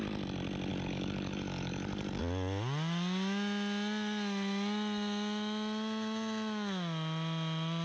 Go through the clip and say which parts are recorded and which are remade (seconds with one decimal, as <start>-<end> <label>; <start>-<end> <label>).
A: 0.0-0.7 recorded; 0.7-2.2 remade; 2.2-7.8 recorded